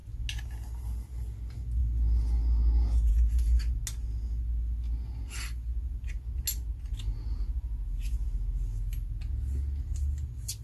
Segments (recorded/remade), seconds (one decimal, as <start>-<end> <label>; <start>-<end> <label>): 0.0-10.6 recorded